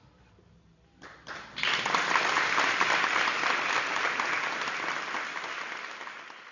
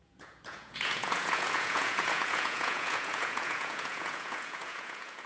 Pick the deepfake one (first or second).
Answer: second